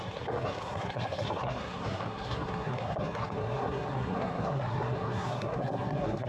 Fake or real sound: fake